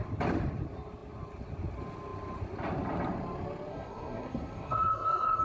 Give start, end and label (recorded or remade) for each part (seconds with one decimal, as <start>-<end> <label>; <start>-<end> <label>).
0.0-3.7 recorded; 3.7-5.4 remade